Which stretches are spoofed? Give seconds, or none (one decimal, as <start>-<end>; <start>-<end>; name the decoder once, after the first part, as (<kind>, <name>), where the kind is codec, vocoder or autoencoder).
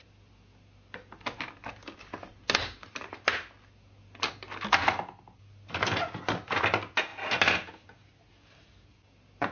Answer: none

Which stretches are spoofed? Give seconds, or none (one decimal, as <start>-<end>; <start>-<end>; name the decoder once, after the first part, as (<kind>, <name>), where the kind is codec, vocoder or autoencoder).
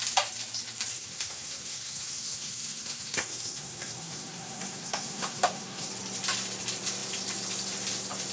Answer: 0.9-5.9 (codec, SNAC)